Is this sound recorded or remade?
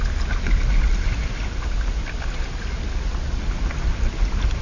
recorded